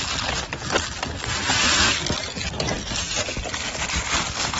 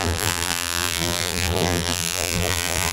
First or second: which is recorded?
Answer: first